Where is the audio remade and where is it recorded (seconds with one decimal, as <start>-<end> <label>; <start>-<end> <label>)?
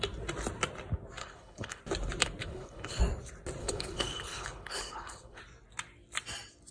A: 0.0-1.2 recorded; 1.2-1.8 remade; 1.8-2.4 recorded; 2.4-3.0 remade; 3.0-3.6 recorded; 3.6-5.4 remade; 5.4-6.7 recorded